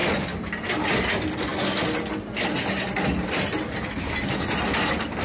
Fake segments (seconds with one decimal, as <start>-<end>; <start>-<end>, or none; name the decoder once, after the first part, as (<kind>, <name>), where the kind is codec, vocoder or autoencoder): none